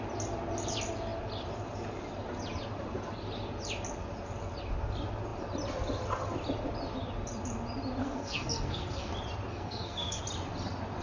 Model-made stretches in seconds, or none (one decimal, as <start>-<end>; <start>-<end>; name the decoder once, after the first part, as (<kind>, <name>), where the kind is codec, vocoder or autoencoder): 8.0-9.1 (codec, SNAC); 9.5-10.2